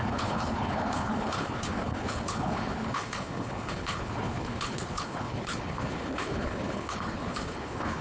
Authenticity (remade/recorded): remade